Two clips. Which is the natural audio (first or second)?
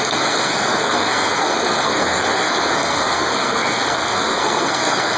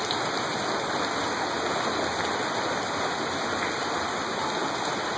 second